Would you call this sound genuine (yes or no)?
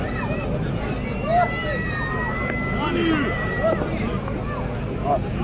yes